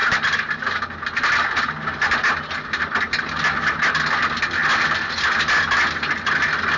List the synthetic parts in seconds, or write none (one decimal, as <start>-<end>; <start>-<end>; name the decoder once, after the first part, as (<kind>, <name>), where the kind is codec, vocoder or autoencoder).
none